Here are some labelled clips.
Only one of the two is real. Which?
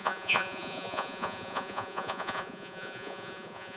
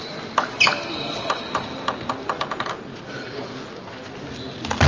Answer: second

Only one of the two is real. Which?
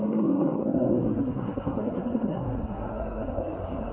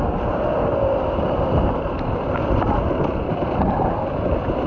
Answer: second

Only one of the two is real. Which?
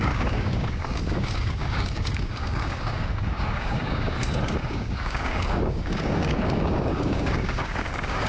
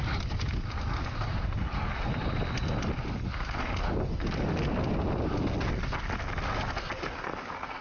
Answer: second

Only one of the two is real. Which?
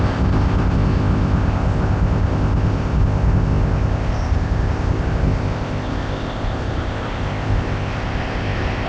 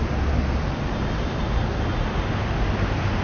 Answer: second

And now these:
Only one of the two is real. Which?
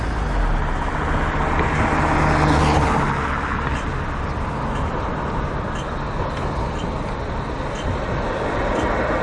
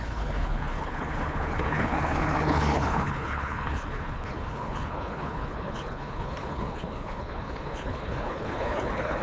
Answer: first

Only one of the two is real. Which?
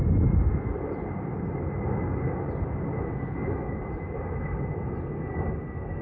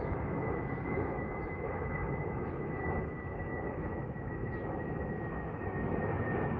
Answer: first